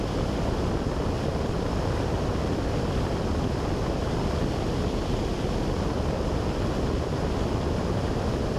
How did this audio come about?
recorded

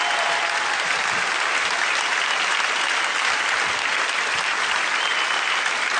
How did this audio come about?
recorded